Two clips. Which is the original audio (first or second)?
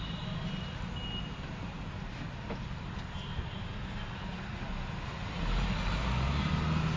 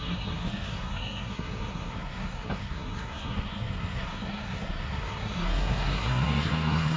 first